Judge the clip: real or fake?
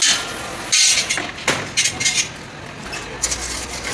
real